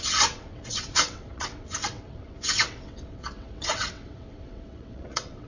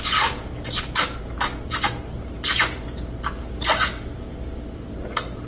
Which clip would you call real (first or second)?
second